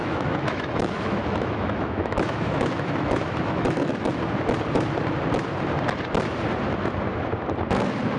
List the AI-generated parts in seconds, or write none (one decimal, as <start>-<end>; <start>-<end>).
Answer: 0.0-4.1